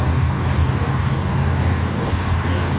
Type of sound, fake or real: fake